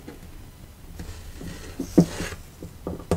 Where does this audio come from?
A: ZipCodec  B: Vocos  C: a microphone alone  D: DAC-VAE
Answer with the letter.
C